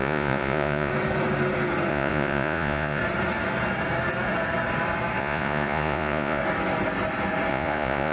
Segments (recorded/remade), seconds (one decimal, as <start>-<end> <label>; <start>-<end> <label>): 0.0-0.9 remade; 0.9-1.9 recorded; 1.9-3.0 remade; 3.0-5.2 recorded; 5.2-6.4 remade; 6.4-7.5 recorded; 7.5-8.1 remade